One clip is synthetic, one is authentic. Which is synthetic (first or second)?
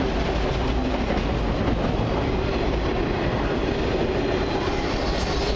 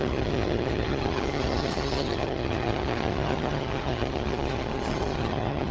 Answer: second